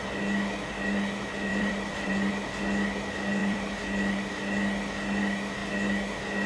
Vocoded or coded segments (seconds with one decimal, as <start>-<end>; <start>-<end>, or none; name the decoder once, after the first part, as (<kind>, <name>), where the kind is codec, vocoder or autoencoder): 1.5-2.3 (vocoder, BigVGAN v2); 3.4-4.3